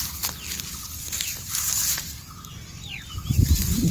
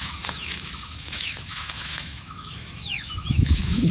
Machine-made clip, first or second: second